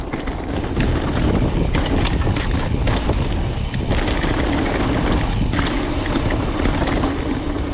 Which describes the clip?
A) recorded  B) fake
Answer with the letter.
A